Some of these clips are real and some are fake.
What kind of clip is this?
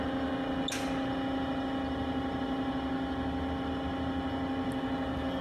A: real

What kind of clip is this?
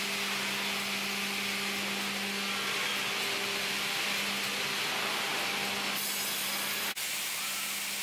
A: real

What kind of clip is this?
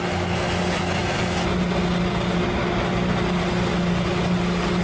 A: real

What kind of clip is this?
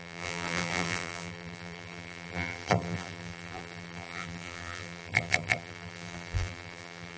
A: fake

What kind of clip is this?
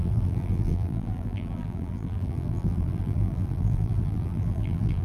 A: fake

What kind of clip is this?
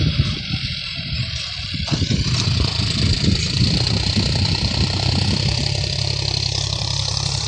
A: fake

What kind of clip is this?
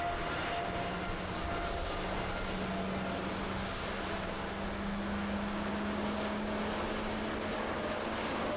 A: real